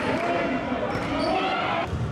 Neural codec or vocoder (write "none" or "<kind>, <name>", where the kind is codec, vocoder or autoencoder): none